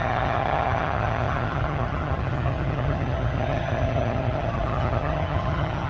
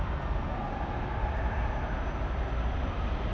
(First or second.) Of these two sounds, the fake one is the first